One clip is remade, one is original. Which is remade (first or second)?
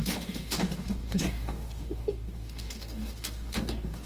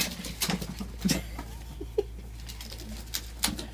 first